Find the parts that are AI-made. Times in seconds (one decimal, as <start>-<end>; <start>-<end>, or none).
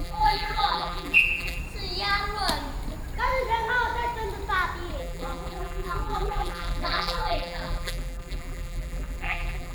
0.0-1.6; 5.0-9.7